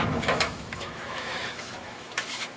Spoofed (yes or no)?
yes